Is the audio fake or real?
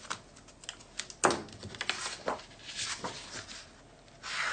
real